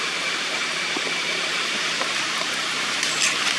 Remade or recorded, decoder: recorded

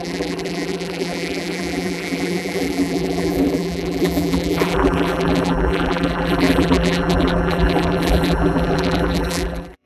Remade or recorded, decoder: remade, vocoder, BigVGAN v2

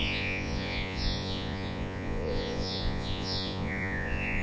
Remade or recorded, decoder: remade, vocoder, Vocos